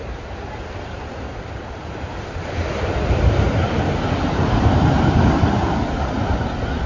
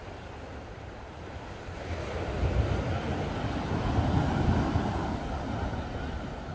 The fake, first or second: first